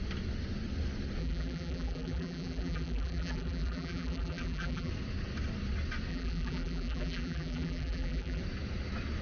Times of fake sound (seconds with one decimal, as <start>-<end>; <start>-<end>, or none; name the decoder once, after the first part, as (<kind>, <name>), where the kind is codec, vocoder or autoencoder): 1.2-4.9 (vocoder, BigVGAN v2); 6.1-8.4

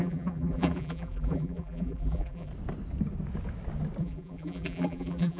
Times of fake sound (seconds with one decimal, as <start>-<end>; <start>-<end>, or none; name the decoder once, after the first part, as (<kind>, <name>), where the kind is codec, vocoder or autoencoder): 0.0-2.5 (vocoder, BigVGAN v2); 4.0-5.4